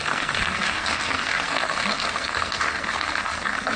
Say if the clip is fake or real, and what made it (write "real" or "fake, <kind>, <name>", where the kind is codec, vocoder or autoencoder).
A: fake, codec, SNAC